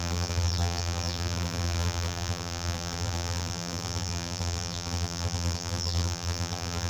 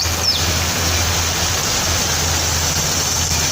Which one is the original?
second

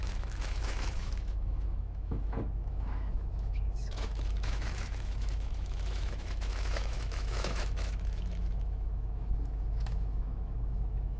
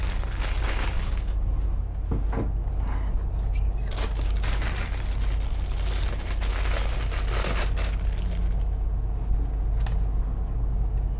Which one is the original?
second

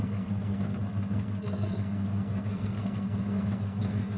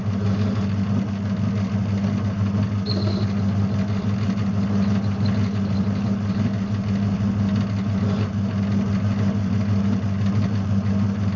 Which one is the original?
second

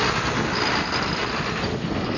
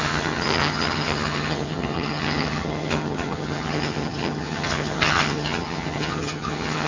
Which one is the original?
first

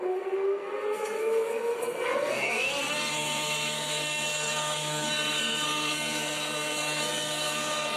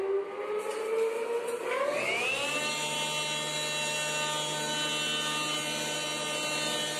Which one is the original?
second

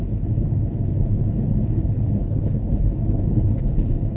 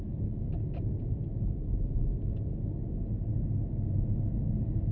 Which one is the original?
second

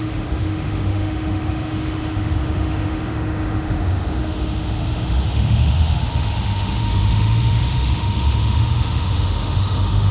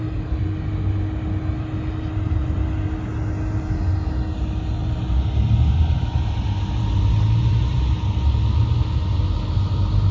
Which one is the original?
second